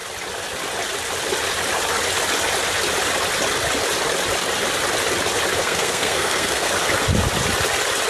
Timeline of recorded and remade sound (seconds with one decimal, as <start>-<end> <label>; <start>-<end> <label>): 0.0-5.6 recorded; 5.6-6.7 remade; 6.7-8.1 recorded